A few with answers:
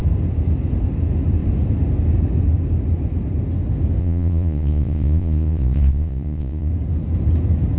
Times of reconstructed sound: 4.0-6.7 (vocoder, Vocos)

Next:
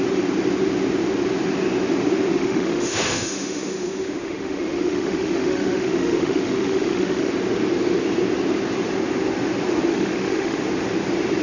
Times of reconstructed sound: 2.3-7.3 (autoencoder, DAC-VAE); 9.9-10.6

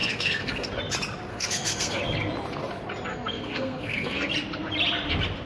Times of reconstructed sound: 0.0-0.7 (codec, SNAC); 1.3-2.0; 3.1-4.3

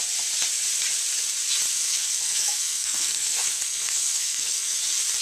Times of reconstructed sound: 1.7-4.8 (codec, SNAC)